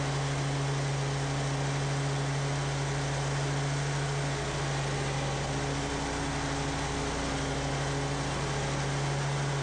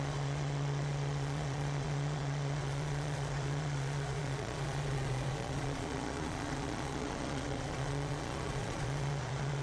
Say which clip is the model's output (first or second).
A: second